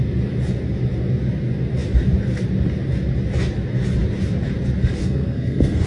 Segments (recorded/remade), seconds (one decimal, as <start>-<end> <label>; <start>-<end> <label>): 0.0-5.0 recorded; 5.0-5.9 remade